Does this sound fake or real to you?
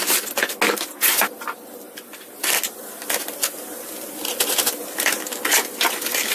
real